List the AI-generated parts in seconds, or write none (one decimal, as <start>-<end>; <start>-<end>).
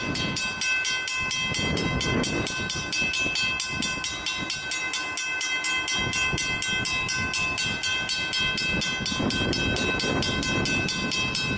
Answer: none